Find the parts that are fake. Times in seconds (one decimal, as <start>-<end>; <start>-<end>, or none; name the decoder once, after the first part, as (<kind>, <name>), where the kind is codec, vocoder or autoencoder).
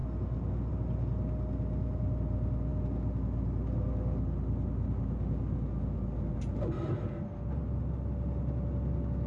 none